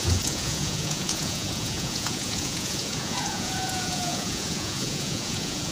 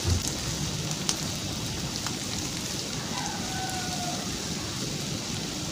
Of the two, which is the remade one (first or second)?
first